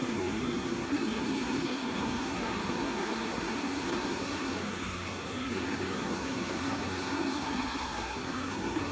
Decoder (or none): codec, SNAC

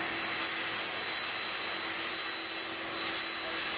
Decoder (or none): none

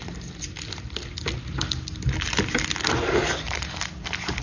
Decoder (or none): none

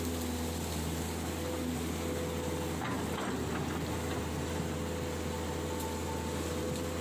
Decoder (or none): none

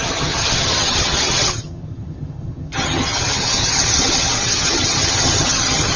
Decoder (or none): vocoder, HiFi-GAN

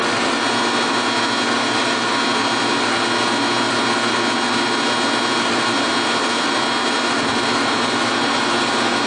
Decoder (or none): none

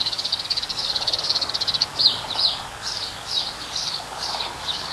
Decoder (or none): codec, DAC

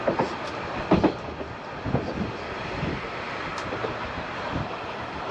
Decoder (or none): none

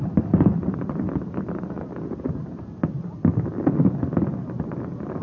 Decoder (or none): none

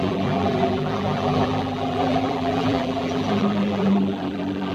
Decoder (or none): vocoder, BigVGAN v2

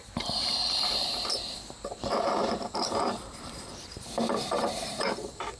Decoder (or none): vocoder, BigVGAN v2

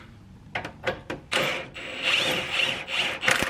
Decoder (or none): none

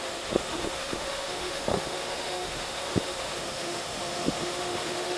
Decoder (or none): autoencoder, DAC-VAE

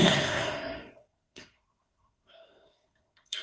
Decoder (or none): codec, SNAC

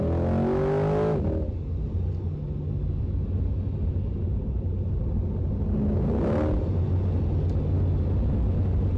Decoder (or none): none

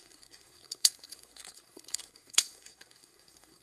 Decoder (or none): codec, SNAC